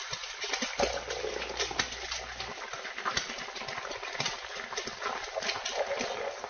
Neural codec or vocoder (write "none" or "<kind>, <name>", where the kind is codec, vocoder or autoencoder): none